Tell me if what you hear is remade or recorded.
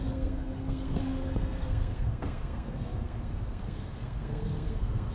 remade